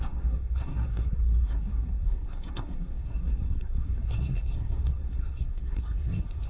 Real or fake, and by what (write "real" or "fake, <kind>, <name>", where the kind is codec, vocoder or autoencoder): fake, codec, SNAC